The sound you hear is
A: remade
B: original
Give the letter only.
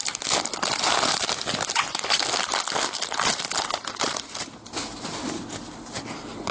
B